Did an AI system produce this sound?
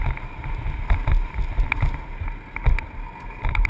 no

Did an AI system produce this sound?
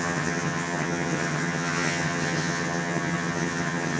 yes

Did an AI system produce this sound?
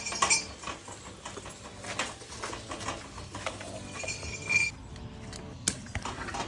no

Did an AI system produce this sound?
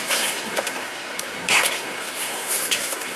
yes